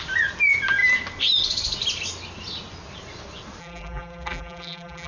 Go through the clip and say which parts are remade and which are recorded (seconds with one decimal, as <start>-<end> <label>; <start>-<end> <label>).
0.0-3.6 recorded; 3.6-5.1 remade